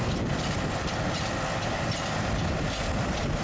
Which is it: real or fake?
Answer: real